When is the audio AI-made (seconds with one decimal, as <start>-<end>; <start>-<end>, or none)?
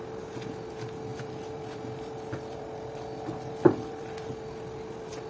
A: 1.1-4.3